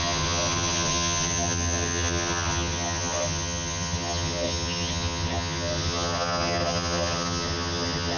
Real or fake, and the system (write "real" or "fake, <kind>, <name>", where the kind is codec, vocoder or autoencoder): fake, vocoder, HiFi-GAN